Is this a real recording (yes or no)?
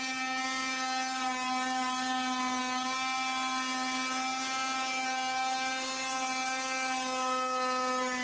yes